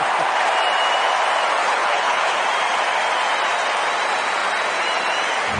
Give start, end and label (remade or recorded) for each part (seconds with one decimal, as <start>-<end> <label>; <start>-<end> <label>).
0.0-1.6 recorded; 1.6-2.4 remade; 2.4-5.6 recorded